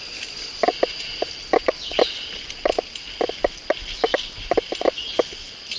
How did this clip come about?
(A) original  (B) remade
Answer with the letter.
A